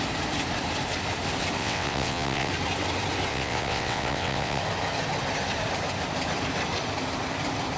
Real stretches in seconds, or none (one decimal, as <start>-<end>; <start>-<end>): 0.0-1.6; 2.5-3.3; 4.6-7.8